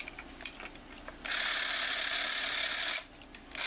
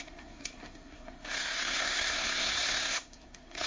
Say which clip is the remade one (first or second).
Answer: second